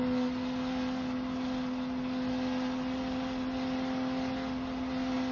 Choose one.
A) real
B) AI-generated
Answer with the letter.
A